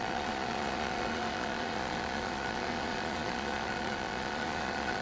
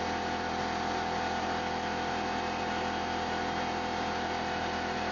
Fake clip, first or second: first